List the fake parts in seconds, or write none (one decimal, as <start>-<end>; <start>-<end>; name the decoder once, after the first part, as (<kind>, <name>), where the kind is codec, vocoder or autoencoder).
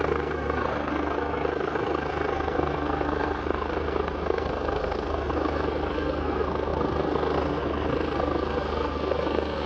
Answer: 0.0-9.7 (codec, SNAC)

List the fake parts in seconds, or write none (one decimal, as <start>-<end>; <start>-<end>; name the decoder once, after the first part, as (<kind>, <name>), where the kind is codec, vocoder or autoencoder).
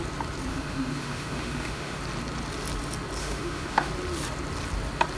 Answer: 0.5-2.0 (autoencoder, DAC-VAE); 3.2-3.9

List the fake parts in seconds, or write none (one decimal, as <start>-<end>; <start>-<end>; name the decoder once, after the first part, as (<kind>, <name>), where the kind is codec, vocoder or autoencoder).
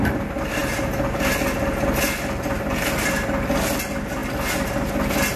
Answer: none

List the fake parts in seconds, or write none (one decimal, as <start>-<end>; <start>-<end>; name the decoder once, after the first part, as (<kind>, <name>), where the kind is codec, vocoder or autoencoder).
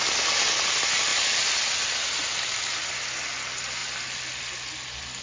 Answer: 1.1-2.9 (vocoder, BigVGAN v2)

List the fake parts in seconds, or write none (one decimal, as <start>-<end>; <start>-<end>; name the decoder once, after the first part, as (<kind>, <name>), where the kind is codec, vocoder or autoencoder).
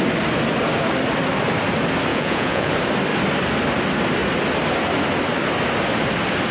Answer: 2.1-2.7 (vocoder, Vocos)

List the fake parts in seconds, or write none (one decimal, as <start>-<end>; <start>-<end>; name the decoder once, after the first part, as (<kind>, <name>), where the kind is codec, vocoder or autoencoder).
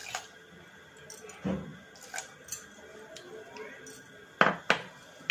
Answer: none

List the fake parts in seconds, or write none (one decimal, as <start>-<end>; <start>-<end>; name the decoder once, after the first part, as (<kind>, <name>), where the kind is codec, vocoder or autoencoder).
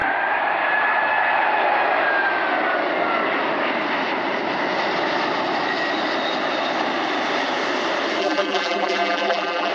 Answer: 8.2-9.7 (vocoder, BigVGAN v2)